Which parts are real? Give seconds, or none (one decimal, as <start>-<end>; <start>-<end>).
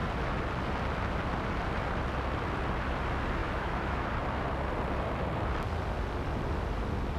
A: 0.0-3.4; 4.1-7.2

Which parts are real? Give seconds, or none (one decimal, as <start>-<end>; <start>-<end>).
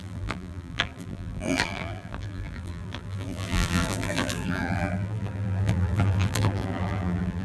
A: none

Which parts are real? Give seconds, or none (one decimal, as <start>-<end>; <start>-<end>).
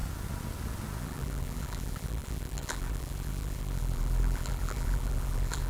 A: 0.0-1.0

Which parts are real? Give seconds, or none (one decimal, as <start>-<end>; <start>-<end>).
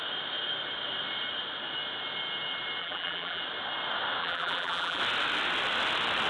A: 0.0-2.8; 3.4-4.2; 5.0-6.3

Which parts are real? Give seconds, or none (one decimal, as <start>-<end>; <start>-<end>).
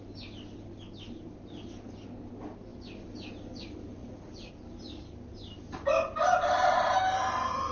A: 0.0-4.0; 4.5-7.7